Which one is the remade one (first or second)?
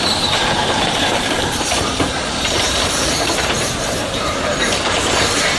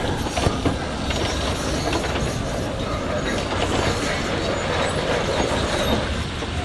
first